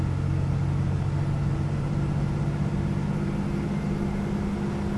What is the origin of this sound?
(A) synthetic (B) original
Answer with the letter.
B